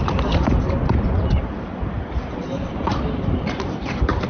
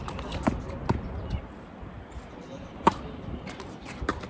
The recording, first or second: second